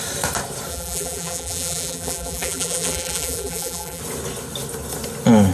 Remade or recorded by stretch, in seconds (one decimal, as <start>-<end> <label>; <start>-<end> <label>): 0.0-0.7 recorded; 0.7-4.0 remade; 4.0-5.5 recorded